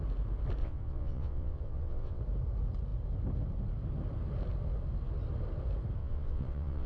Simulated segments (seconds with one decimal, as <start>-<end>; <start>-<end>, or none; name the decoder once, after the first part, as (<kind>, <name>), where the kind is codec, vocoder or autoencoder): 0.6-2.2 (vocoder, WaveNeXt); 6.0-6.9